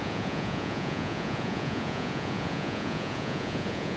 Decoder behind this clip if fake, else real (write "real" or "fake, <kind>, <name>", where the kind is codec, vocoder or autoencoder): fake, vocoder, Vocos